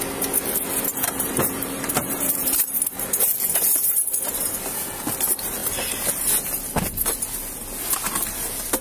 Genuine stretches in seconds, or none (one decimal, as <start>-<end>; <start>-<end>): 0.0-0.9; 2.8-8.8